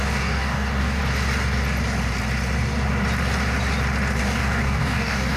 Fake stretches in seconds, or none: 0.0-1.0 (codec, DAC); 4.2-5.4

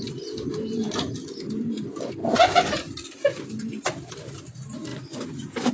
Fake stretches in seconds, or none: none

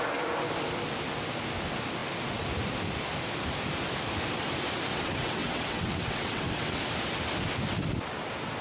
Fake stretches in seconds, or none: 4.9-6.8 (vocoder, WaveNeXt)

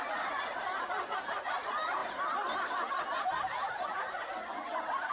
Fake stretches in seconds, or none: none

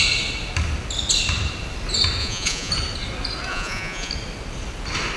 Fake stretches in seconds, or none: 2.2-2.7 (vocoder, Vocos); 3.5-4.1